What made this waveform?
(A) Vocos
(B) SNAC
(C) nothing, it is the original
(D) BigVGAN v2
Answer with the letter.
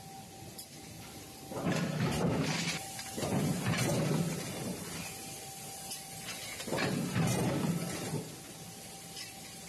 C